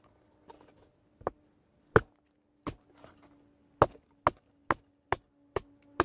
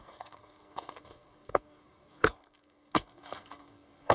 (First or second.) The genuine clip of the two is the first